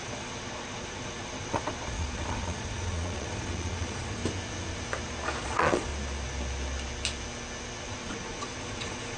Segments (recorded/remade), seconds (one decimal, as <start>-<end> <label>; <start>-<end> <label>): 0.0-4.2 remade; 4.2-5.4 recorded; 5.4-5.9 remade; 5.9-7.8 recorded; 7.8-9.2 remade